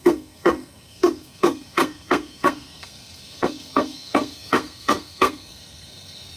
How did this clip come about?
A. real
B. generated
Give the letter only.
B